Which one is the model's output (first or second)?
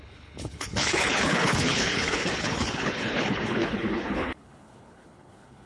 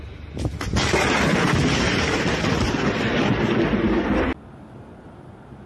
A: first